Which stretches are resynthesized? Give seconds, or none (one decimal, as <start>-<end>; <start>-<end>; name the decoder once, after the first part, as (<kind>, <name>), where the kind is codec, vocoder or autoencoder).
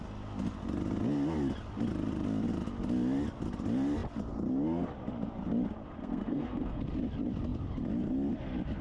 6.0-6.8 (codec, SNAC)